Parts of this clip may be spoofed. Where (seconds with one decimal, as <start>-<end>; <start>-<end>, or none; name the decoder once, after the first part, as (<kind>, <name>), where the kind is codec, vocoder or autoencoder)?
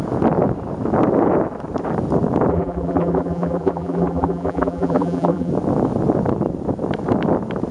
2.5-5.5 (vocoder, BigVGAN v2)